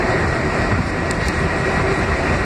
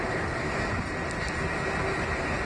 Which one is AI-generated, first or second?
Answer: first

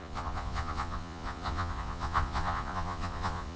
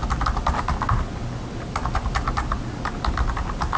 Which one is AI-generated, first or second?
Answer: first